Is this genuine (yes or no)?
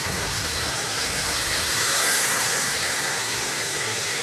no